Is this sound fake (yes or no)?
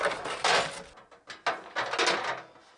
no